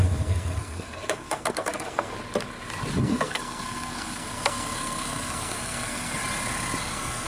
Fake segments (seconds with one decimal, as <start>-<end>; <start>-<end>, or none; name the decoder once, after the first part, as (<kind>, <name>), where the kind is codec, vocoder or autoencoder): 0.0-2.1 (codec, SNAC); 3.0-6.2; 6.8-7.3